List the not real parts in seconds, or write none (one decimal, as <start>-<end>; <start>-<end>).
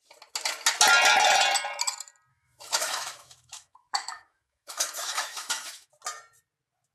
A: 2.3-5.9